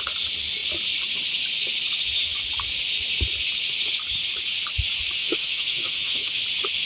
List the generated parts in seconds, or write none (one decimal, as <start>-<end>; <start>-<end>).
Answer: 5.2-6.4